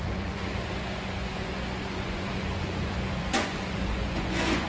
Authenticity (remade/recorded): remade